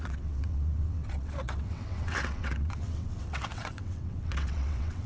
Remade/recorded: remade